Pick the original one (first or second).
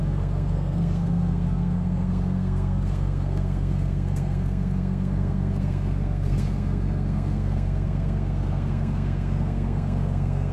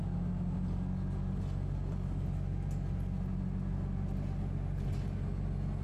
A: second